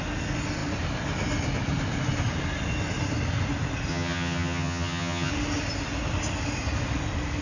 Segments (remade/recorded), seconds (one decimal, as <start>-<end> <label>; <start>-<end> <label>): 0.0-3.9 recorded; 3.9-5.3 remade; 5.3-7.4 recorded